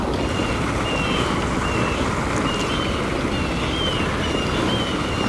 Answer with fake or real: real